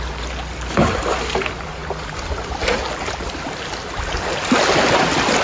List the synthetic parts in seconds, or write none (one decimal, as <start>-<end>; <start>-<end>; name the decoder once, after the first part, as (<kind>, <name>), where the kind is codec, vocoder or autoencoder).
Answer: none